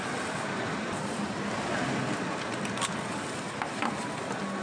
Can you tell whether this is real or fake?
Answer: real